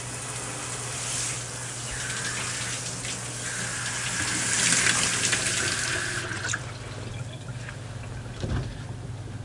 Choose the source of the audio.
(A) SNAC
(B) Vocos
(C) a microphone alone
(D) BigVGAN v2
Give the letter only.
C